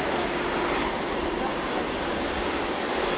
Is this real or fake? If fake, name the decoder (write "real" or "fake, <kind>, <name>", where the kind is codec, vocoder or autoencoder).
real